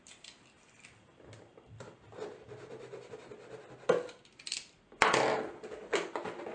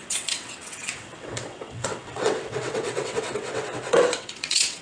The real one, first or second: first